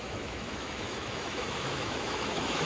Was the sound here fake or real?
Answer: fake